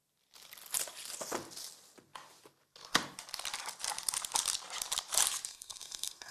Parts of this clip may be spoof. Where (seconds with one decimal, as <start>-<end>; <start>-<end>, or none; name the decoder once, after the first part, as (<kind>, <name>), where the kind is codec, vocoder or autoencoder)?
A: 5.5-6.3 (codec, SNAC)